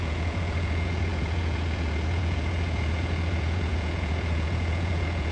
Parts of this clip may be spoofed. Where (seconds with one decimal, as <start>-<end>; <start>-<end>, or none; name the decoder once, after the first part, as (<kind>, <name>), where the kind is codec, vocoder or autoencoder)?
0.0-5.3 (vocoder, Vocos)